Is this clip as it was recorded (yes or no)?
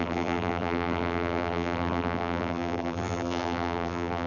no